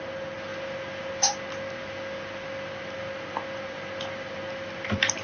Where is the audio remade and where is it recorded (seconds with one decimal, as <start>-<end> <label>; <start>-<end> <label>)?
0.0-5.2 recorded